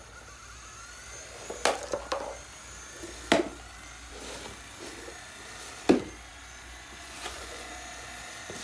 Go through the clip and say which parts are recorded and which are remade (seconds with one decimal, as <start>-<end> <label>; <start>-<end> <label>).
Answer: 0.0-6.3 recorded; 6.3-8.1 remade; 8.1-8.6 recorded